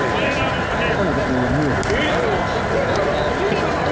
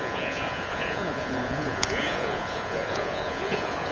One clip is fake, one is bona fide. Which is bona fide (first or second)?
first